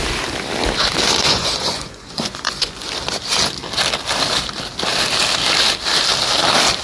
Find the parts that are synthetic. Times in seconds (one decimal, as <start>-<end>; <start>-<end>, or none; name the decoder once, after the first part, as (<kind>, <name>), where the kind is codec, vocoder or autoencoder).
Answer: 1.2-2.9 (vocoder, Vocos)